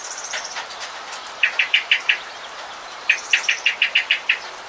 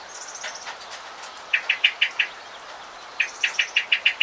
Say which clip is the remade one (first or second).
first